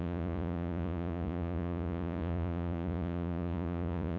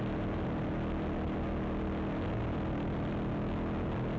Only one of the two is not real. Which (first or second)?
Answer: first